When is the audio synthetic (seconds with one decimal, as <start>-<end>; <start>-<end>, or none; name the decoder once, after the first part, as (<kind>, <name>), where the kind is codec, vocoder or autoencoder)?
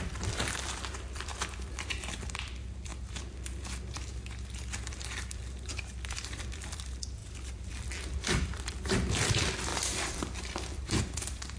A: 0.0-2.9 (vocoder, BigVGAN v2); 4.9-11.6